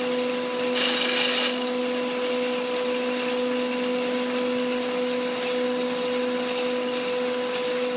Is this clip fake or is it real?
real